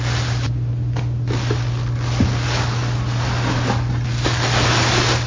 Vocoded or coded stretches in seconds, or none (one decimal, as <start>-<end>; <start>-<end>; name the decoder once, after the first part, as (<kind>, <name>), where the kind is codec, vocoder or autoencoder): none